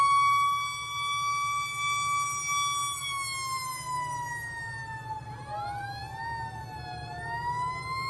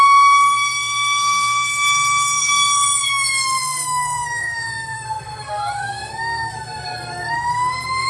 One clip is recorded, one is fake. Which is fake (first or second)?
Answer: second